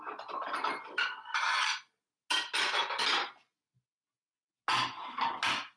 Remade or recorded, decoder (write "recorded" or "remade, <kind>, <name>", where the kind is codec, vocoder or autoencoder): recorded